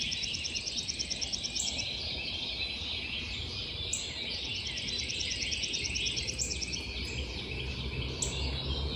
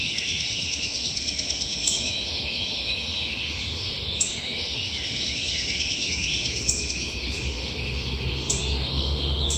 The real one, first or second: first